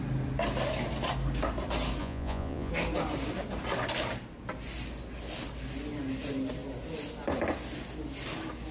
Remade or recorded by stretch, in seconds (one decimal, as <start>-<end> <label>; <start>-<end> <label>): 0.0-2.0 recorded; 2.0-2.7 remade; 2.7-8.7 recorded